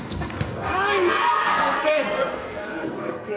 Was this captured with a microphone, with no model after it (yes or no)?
no